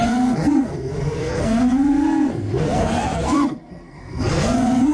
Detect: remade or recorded remade